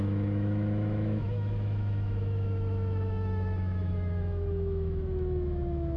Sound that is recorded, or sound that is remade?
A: remade